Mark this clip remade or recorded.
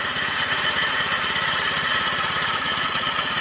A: remade